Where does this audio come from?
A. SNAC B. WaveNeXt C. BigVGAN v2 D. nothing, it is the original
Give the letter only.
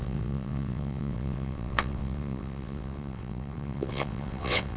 B